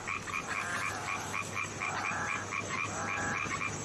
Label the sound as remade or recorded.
recorded